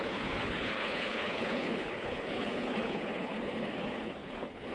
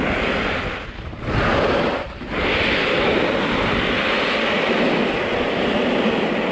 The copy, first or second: first